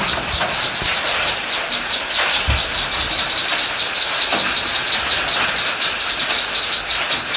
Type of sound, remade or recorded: recorded